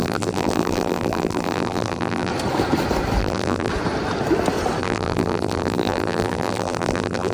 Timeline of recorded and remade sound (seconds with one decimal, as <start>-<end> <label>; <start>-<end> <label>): 0.0-2.3 remade; 2.3-3.2 recorded; 3.2-3.7 remade; 3.7-4.8 recorded; 4.8-7.3 remade